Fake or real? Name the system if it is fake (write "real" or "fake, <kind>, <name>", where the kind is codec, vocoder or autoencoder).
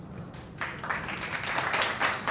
real